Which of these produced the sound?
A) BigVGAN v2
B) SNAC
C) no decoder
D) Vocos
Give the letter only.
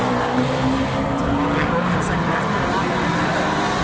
C